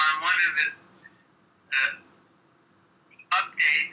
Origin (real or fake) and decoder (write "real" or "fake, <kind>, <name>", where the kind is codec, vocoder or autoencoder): real